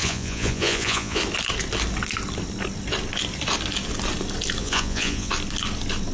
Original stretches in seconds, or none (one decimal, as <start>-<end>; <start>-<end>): 1.2-4.6; 5.3-6.1